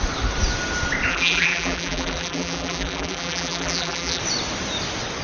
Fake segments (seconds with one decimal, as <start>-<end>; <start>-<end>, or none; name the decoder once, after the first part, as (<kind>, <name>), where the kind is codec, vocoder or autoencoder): 1.1-4.2 (vocoder, BigVGAN v2)

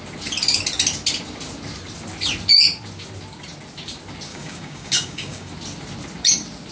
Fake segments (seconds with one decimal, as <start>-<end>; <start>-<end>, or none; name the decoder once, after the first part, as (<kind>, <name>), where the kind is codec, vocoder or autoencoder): 4.3-5.5 (codec, DAC)